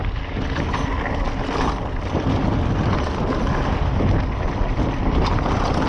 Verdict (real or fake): real